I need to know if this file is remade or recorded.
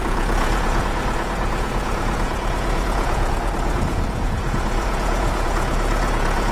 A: remade